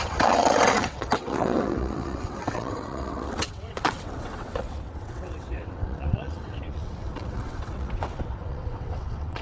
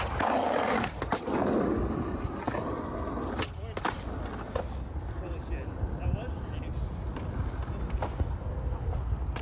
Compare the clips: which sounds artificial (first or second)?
first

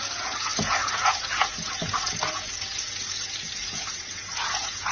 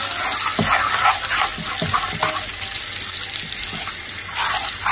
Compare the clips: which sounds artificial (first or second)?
first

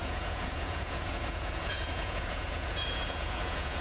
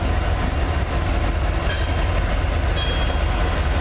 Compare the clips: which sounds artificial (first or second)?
first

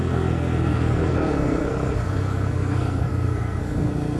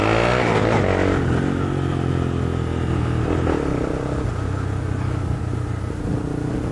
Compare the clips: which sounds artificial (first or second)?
first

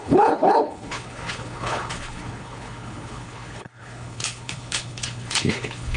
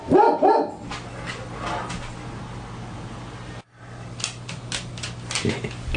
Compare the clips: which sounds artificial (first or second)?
first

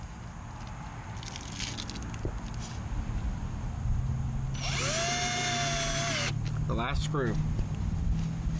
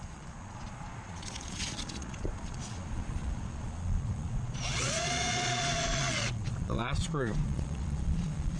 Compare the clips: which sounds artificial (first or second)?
second